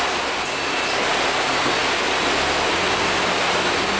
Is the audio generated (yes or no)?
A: no